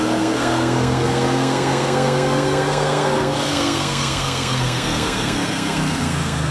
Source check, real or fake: fake